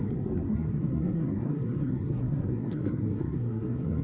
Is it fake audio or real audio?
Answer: fake